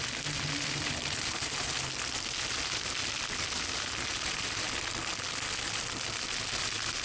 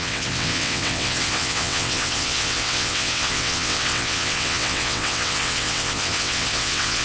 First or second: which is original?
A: first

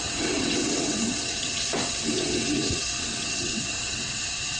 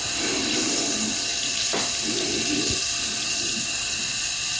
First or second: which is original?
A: second